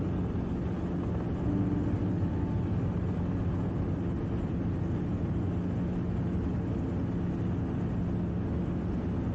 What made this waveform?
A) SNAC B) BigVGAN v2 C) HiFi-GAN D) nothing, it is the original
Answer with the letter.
D